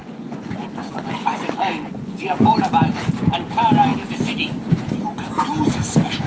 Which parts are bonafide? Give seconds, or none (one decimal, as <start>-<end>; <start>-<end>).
2.6-6.3